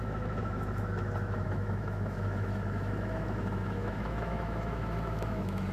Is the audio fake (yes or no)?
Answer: yes